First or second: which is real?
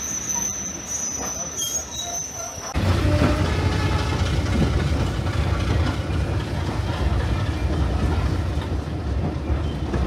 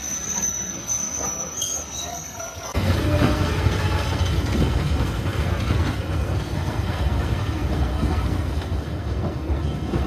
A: first